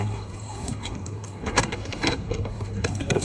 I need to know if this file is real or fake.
fake